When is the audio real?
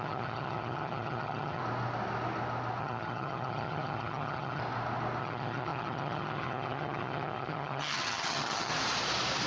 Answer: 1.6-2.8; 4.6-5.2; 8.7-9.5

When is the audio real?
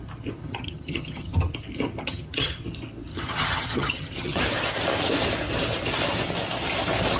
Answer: 0.0-0.4; 1.3-2.0; 2.6-3.1; 4.4-7.2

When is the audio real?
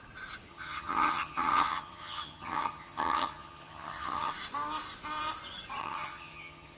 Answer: 0.0-0.5; 4.3-5.8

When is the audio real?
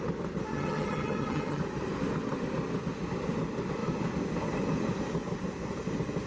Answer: 0.0-0.5; 1.6-6.3